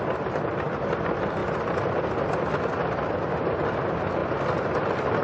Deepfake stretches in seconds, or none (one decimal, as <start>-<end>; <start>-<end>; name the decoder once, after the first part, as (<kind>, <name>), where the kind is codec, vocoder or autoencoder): none